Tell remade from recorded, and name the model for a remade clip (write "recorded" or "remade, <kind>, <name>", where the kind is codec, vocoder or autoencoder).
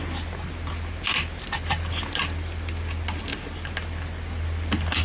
recorded